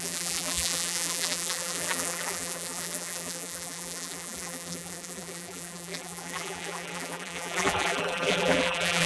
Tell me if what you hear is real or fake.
fake